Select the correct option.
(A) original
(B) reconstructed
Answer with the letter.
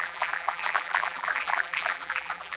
B